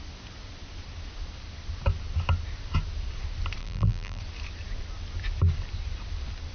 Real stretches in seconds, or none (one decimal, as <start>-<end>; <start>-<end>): 0.0-3.6; 4.2-6.5